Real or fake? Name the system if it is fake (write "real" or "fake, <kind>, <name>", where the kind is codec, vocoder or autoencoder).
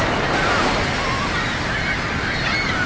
real